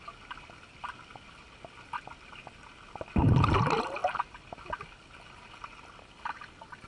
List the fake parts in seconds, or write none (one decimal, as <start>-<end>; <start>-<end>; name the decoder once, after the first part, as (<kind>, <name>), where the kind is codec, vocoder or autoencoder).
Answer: none